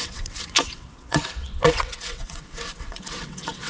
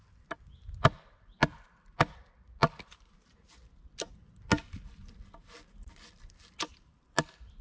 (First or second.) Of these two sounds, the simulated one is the first